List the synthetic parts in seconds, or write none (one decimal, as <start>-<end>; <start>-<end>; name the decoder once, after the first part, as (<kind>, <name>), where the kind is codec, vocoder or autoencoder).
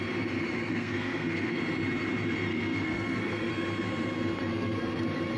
0.7-1.6 (codec, SNAC); 2.5-3.5; 4.5-5.0